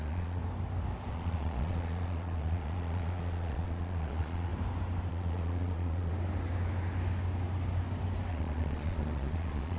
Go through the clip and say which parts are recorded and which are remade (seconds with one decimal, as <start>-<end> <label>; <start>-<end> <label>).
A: 0.0-0.4 remade; 0.4-1.1 recorded; 1.1-4.5 remade; 4.5-5.1 recorded; 5.1-6.1 remade; 6.1-8.3 recorded; 8.3-9.8 remade